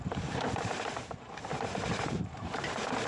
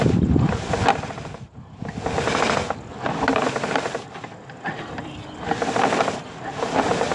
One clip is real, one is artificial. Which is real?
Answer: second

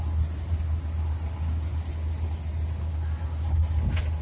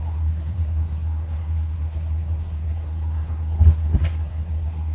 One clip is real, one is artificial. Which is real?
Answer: first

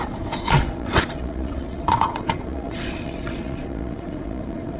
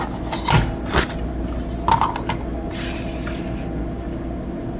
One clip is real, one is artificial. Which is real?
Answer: second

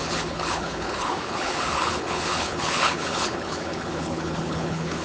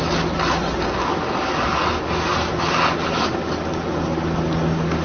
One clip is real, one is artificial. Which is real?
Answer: second